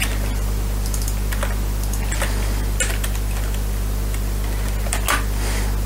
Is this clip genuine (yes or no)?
yes